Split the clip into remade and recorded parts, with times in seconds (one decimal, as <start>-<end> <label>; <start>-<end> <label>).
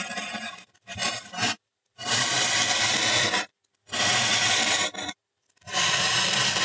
0.0-1.0 recorded; 1.0-2.4 remade; 2.4-6.6 recorded